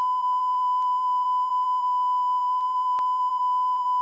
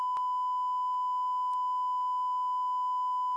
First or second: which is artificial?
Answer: first